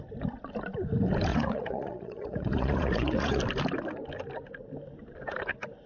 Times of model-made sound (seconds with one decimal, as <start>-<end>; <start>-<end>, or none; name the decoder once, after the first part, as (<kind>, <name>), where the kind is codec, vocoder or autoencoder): 1.3-3.4 (vocoder, Vocos)